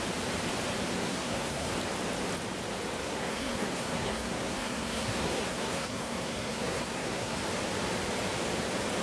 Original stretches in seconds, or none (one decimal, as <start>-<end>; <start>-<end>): 0.0-1.0; 1.7-3.0; 7.4-9.0